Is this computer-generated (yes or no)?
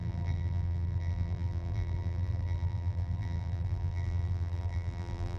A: yes